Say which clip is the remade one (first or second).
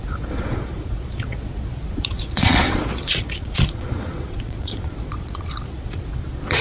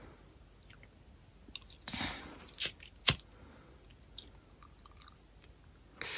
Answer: first